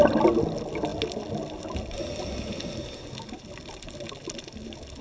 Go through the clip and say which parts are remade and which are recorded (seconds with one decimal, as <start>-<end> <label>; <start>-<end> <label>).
0.0-5.0 recorded